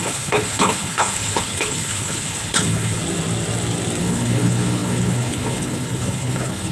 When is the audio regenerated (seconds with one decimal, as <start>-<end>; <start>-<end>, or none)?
0.0-3.0; 4.0-6.7